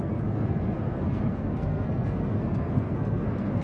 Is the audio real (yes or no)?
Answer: no